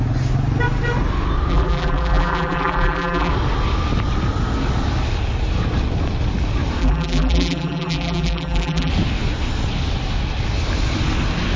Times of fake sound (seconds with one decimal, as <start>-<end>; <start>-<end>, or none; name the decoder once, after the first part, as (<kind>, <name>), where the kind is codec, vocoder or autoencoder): 1.5-3.3 (vocoder, BigVGAN v2); 6.8-8.9